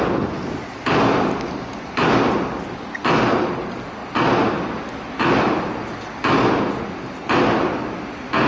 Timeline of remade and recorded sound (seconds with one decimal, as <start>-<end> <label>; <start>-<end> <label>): 0.0-8.5 recorded